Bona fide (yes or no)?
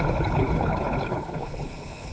no